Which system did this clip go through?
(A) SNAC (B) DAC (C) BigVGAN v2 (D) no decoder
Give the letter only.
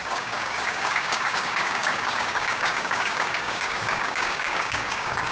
B